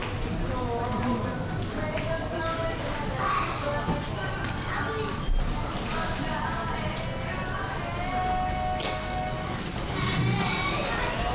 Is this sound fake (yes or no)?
no